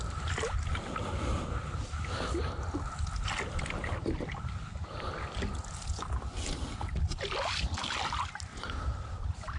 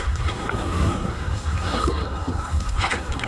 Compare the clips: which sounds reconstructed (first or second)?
second